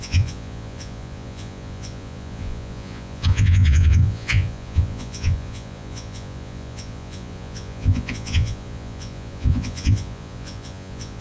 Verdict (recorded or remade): remade